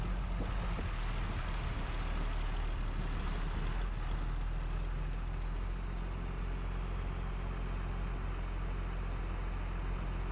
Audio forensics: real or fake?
real